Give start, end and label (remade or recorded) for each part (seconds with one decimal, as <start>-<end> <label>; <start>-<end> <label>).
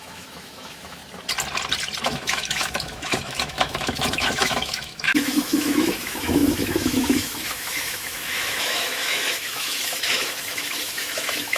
0.0-1.0 remade; 1.0-2.0 recorded; 2.0-11.6 remade